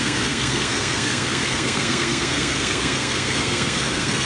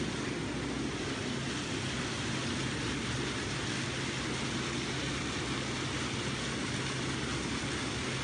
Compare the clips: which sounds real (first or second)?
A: second